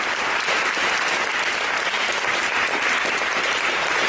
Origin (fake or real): real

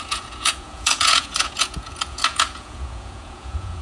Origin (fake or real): fake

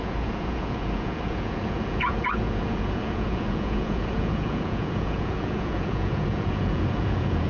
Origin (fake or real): fake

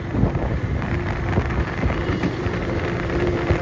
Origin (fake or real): real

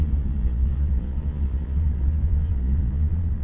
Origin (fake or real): fake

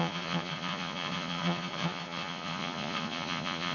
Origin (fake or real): fake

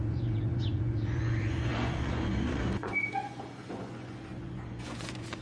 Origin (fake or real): fake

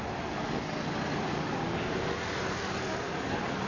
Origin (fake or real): real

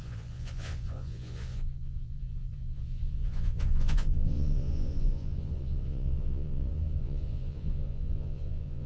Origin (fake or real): fake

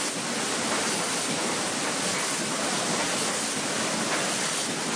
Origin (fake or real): real